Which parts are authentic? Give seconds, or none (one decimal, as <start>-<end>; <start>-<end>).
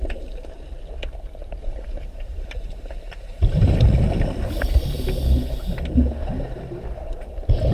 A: 0.0-1.4; 3.8-7.7